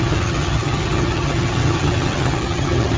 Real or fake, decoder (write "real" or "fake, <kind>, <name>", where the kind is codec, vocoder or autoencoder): fake, vocoder, HiFi-GAN